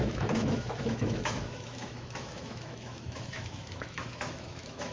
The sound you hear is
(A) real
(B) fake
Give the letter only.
B